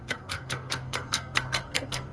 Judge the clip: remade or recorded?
remade